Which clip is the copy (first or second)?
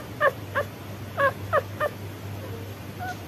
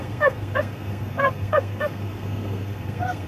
second